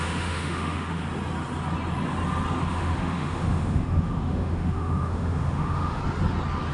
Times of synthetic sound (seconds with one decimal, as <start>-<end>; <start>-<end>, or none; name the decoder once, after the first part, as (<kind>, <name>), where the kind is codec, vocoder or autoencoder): 0.0-1.0 (autoencoder, DAC-VAE); 2.7-6.0